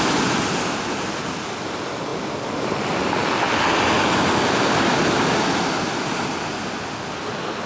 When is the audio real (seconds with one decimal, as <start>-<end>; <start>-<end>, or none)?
0.0-7.7